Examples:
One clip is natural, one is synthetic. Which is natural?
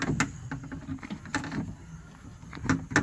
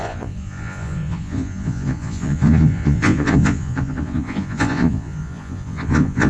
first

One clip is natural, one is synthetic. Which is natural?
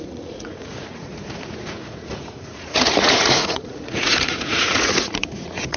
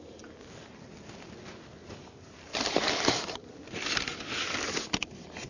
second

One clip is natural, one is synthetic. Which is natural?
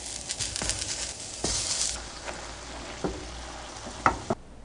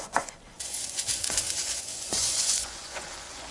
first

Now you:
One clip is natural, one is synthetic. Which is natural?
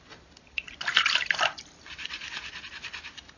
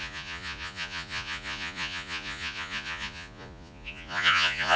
first